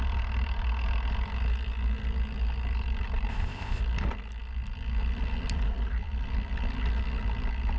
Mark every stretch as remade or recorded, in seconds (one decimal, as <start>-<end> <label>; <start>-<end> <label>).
0.0-3.3 recorded; 3.3-3.8 remade; 3.8-7.8 recorded